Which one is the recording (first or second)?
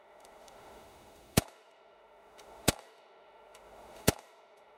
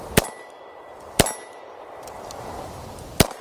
second